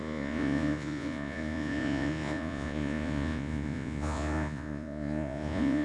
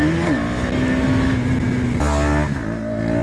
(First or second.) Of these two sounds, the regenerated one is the first